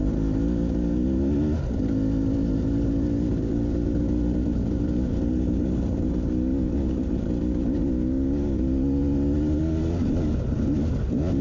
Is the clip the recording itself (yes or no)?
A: yes